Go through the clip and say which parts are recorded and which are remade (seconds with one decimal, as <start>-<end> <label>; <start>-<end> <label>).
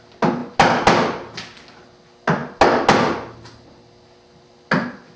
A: 0.0-5.2 recorded